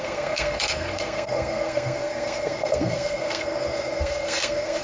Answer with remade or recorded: remade